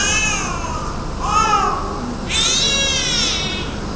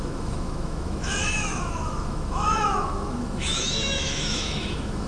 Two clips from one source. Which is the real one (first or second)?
first